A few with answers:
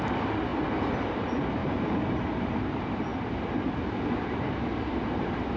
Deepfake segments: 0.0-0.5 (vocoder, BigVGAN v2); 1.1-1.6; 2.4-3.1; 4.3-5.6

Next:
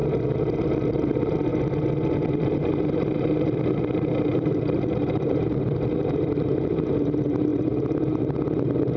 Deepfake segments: 0.9-1.5 (vocoder, BigVGAN v2); 2.2-9.0